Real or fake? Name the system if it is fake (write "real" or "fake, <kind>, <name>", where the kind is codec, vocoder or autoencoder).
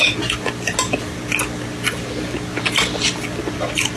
real